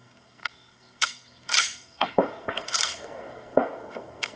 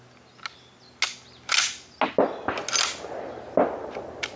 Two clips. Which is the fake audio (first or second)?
first